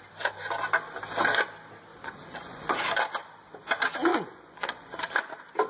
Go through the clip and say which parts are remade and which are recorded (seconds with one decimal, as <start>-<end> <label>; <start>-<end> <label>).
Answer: 0.0-1.9 recorded; 1.9-3.0 remade; 3.0-4.1 recorded; 4.1-5.0 remade; 5.0-5.7 recorded